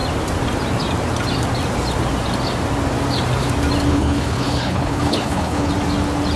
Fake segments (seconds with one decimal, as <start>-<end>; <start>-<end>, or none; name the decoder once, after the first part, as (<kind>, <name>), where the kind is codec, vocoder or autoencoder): 3.9-5.7 (codec, HILCodec)